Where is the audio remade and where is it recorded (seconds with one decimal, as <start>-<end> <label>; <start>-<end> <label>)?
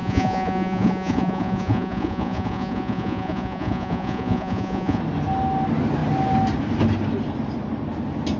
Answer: 0.0-5.0 remade; 5.0-8.4 recorded